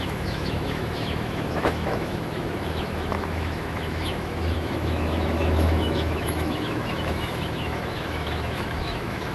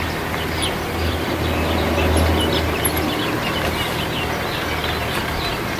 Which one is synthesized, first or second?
first